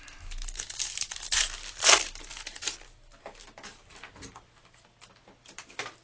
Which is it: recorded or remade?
recorded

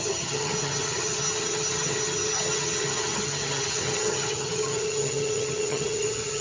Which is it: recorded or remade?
remade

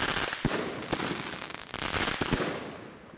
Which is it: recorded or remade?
recorded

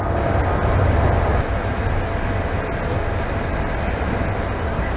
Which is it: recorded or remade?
recorded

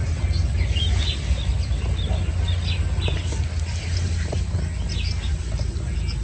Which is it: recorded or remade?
recorded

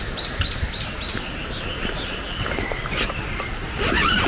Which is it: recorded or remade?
recorded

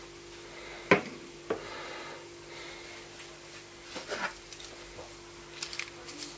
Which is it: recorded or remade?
recorded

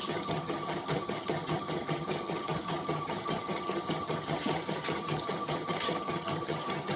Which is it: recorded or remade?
remade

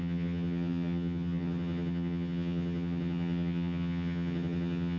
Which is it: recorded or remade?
remade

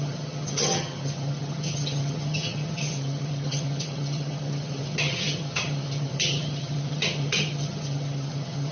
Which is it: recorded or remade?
remade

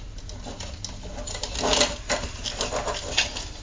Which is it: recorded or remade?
recorded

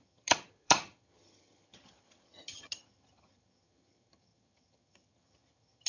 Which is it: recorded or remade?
remade